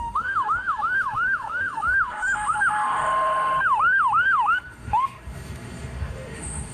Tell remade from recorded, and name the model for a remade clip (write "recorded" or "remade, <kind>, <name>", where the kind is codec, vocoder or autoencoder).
remade, autoencoder, DAC-VAE